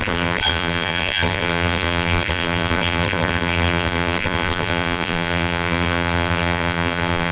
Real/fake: fake